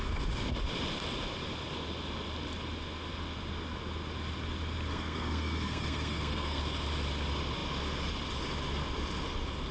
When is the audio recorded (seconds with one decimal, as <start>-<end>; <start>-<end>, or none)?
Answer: 0.0-4.9; 6.6-9.7